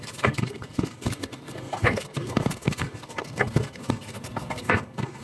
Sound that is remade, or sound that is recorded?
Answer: remade